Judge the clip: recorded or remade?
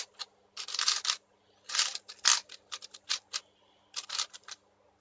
recorded